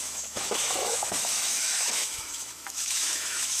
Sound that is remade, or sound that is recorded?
remade